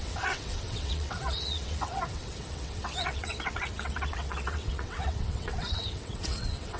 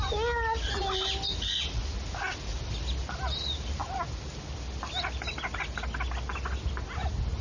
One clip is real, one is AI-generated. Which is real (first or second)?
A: second